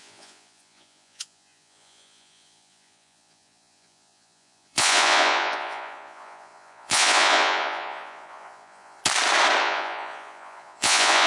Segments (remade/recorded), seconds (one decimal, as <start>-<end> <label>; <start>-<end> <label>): 0.0-9.0 remade; 9.0-9.6 recorded; 9.6-11.3 remade